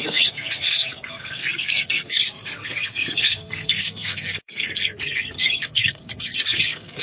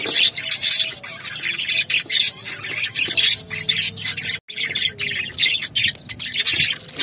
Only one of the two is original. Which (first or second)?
second